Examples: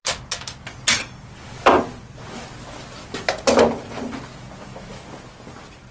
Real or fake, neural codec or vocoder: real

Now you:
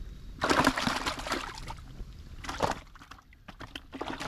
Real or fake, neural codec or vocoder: real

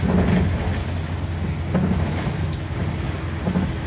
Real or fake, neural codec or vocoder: real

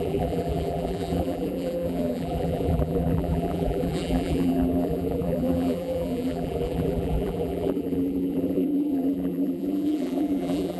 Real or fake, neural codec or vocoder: fake, vocoder, BigVGAN v2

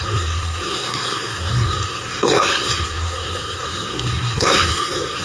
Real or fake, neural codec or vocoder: fake, codec, SNAC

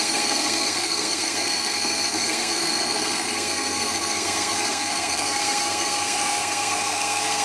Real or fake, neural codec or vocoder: fake, codec, SNAC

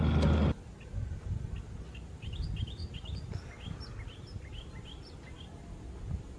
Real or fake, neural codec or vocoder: real